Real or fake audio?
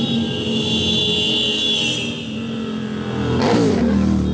real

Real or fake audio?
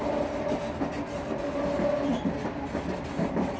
real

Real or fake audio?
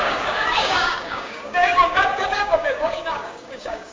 fake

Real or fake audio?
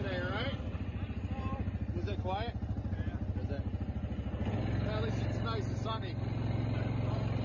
real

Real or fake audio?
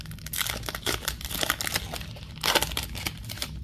real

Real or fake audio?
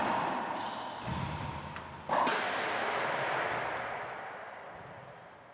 real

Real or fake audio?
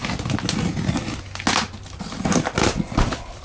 real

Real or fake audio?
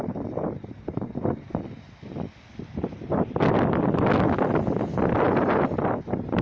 real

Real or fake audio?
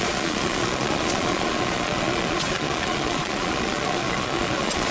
fake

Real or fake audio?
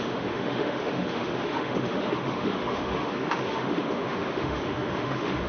fake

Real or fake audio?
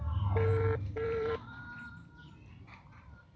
fake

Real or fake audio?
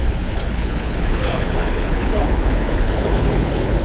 fake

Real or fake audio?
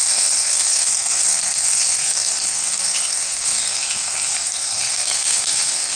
fake